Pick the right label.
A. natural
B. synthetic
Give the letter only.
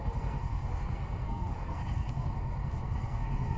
B